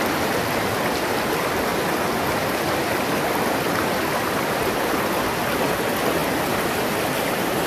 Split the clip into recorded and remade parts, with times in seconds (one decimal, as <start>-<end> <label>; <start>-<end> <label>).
0.0-7.7 recorded